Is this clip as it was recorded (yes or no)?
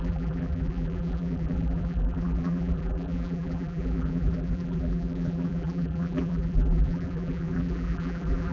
no